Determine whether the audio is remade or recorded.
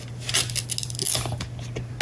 recorded